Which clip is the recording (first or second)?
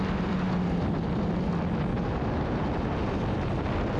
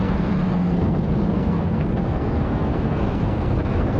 first